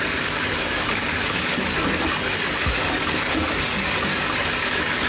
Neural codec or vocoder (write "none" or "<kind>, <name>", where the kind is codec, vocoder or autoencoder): codec, DAC